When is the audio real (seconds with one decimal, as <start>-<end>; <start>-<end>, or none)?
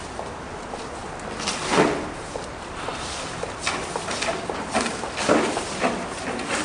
0.0-6.6